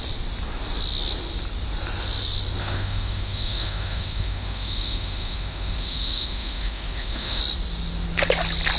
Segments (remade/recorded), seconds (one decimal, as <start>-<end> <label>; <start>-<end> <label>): 0.0-2.6 recorded; 2.6-7.4 remade; 7.4-8.8 recorded